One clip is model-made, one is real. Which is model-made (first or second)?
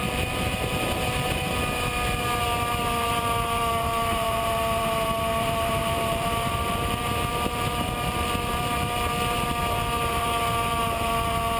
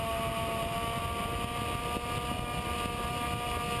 first